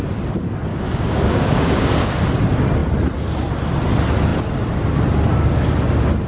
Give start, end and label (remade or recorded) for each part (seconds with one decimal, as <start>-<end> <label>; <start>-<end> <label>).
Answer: 0.0-0.7 recorded; 0.7-2.1 remade; 2.1-6.3 recorded

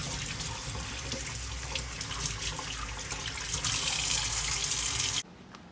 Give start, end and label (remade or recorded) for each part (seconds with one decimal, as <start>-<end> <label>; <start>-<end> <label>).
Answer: 0.0-5.7 recorded

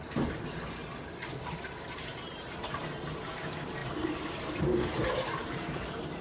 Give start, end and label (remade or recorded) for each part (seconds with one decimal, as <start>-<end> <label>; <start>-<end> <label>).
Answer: 0.0-0.8 remade; 0.8-1.9 recorded; 1.9-6.2 remade

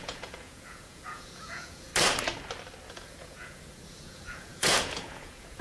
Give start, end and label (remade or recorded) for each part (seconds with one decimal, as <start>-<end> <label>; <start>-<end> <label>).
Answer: 0.0-1.9 remade; 1.9-2.9 recorded; 2.9-5.6 remade

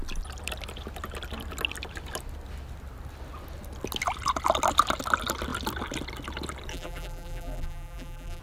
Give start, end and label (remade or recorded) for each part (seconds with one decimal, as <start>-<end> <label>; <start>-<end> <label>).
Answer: 0.0-6.7 recorded; 6.7-8.4 remade